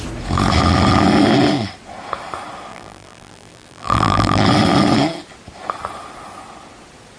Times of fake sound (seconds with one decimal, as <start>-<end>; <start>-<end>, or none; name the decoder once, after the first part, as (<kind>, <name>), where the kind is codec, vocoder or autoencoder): 2.7-4.4 (vocoder, BigVGAN v2)